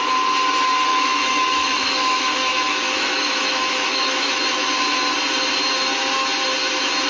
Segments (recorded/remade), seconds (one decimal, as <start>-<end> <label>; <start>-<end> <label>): 0.0-0.9 recorded; 0.9-4.3 remade; 4.3-7.1 recorded